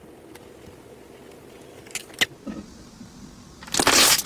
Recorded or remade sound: recorded